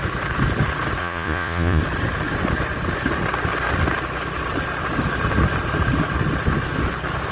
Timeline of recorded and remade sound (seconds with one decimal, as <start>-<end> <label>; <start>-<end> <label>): 0.0-1.0 recorded; 1.0-1.8 remade; 1.8-7.3 recorded